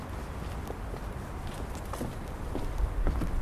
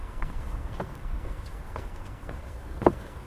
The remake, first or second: second